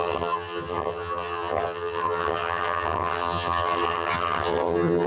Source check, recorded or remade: remade